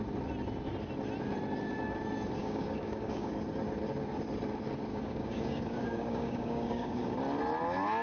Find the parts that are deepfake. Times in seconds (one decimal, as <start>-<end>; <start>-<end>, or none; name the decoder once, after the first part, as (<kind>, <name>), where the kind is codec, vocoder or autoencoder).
2.4-3.3 (codec, DAC); 4.9-7.2